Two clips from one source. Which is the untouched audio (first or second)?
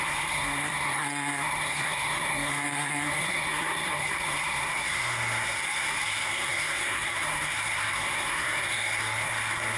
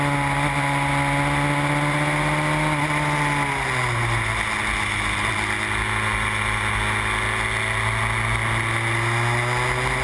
second